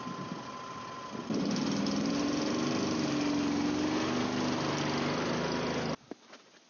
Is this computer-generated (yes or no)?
no